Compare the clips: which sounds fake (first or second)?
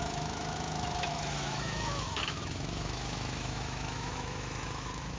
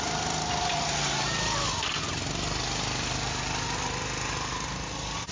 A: first